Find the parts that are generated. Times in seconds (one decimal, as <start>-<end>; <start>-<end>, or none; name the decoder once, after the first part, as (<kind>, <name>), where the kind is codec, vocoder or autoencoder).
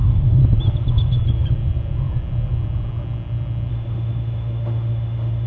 0.0-0.4 (autoencoder, DAC-VAE); 3.7-5.5